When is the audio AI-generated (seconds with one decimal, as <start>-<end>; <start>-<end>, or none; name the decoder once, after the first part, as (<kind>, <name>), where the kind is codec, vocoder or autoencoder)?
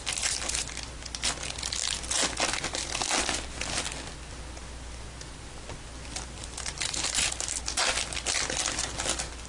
none